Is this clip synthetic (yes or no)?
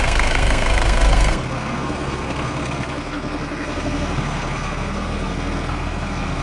yes